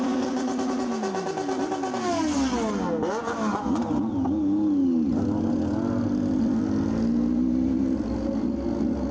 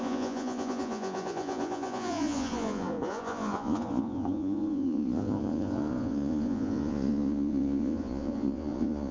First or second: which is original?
first